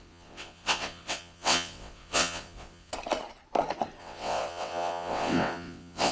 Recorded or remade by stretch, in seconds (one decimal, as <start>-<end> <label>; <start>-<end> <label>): 0.0-2.9 remade; 2.9-4.0 recorded; 4.0-6.1 remade